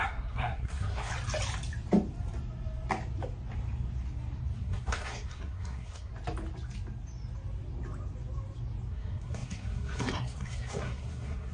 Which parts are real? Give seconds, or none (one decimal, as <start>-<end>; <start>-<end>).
1.1-4.6; 6.1-8.9